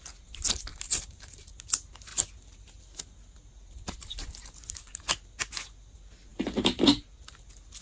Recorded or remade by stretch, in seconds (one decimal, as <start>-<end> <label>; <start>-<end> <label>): 0.0-0.7 recorded; 0.7-1.5 remade; 1.5-7.8 recorded